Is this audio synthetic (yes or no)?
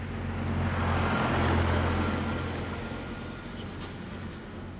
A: no